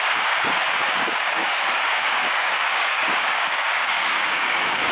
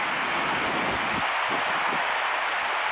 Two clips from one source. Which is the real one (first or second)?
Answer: second